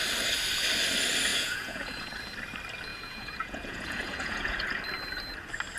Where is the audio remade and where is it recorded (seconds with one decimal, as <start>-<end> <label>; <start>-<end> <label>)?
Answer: 0.0-1.3 recorded; 1.3-2.2 remade; 2.2-2.9 recorded; 2.9-4.8 remade; 4.8-5.8 recorded